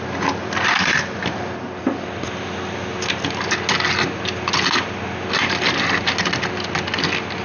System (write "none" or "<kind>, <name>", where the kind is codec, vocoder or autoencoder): none